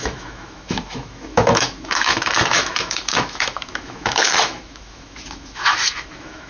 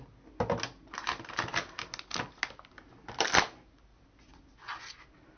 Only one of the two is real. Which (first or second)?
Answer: second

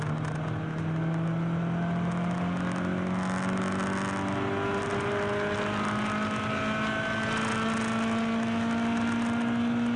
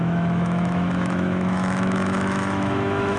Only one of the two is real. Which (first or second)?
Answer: first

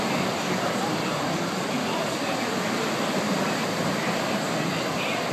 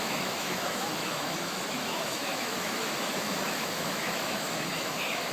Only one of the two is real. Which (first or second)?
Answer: first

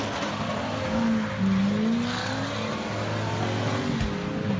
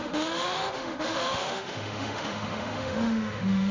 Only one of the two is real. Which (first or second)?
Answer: first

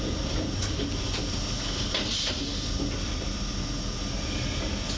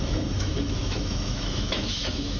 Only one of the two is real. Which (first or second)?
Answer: first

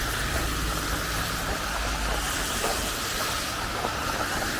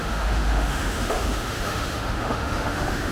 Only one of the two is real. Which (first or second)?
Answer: first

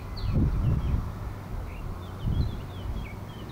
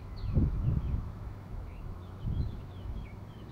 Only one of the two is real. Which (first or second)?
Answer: first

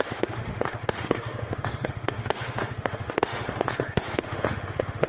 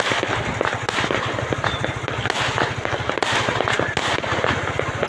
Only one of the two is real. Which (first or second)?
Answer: second